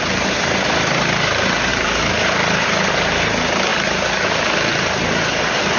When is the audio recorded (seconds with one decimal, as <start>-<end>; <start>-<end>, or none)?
0.0-5.8